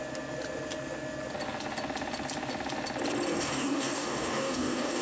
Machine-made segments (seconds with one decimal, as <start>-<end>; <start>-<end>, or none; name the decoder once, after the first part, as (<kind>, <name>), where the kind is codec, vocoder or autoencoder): 3.3-5.0 (codec, DAC)

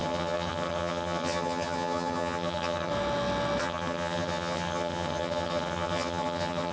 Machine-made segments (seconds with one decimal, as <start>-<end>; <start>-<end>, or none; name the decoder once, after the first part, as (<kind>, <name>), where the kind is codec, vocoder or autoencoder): 0.0-2.9 (vocoder, HiFi-GAN); 3.6-6.7

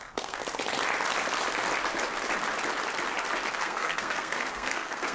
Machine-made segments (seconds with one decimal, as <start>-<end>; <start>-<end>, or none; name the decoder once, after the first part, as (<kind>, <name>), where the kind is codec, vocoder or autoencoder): 0.0-0.4 (codec, SNAC); 3.5-5.1

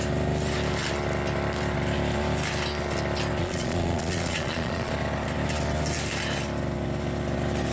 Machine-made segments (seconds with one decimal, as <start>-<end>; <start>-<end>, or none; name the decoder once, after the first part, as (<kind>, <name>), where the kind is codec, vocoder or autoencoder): 3.4-4.9 (vocoder, Vocos)

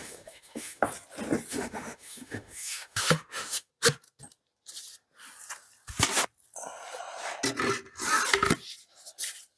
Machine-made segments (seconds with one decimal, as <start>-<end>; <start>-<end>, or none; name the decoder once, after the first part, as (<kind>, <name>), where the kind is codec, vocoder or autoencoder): 0.0-0.8 (autoencoder, DAC-VAE); 1.5-3.7

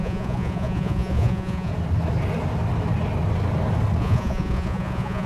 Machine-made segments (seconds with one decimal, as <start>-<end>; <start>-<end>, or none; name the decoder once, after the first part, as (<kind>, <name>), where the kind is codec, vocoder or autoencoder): 0.0-1.7 (vocoder, Vocos); 4.0-5.3

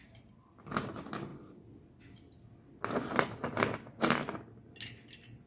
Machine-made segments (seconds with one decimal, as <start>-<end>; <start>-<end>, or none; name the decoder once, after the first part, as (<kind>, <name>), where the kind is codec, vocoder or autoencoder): none